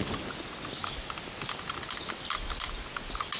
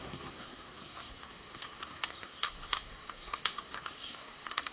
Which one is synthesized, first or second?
second